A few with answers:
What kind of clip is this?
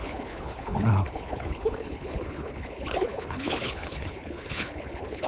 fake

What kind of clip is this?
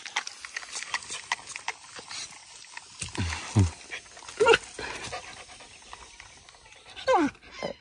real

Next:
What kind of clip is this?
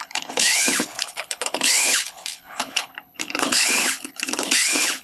fake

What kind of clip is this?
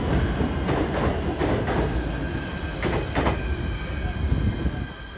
real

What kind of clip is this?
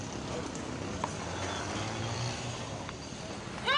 real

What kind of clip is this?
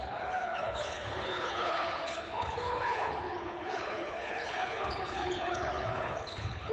fake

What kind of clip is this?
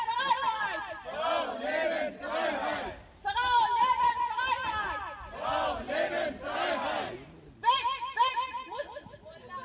real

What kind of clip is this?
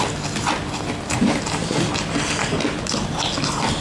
real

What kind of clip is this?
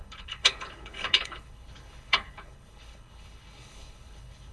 fake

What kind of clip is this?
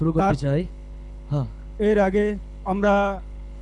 fake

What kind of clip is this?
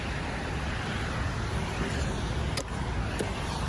real